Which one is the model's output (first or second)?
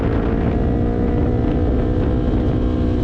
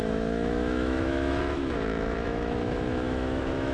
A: second